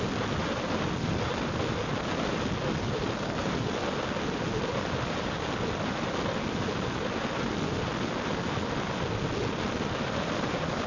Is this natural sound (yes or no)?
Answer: yes